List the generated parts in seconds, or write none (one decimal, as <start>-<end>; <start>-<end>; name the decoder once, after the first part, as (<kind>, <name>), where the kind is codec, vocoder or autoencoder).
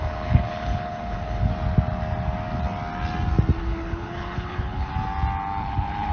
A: 0.0-1.5 (codec, HILCodec); 3.6-4.9; 5.6-6.1